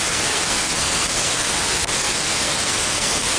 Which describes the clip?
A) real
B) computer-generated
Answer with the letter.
B